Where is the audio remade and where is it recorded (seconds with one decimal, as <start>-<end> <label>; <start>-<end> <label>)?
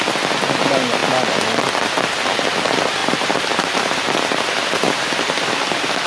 0.0-3.0 recorded; 3.0-5.5 remade; 5.5-6.1 recorded